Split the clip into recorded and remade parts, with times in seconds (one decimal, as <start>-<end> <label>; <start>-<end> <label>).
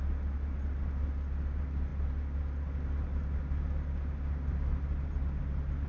0.0-5.9 recorded